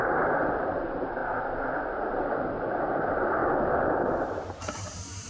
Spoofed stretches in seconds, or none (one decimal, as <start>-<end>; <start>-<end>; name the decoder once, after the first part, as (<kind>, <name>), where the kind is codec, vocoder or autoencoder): 0.0-1.2 (vocoder, BigVGAN v2); 2.1-3.4; 4.2-5.3